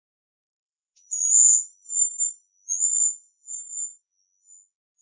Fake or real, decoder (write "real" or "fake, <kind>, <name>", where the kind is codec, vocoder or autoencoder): fake, vocoder, Vocos